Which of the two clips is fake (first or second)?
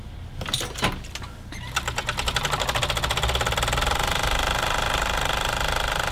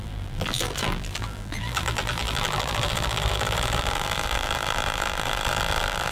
second